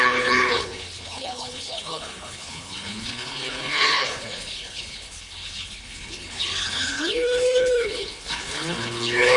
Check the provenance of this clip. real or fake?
fake